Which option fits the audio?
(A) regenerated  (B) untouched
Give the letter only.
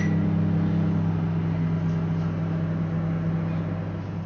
B